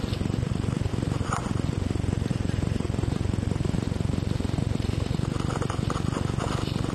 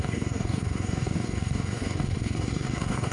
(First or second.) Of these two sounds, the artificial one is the second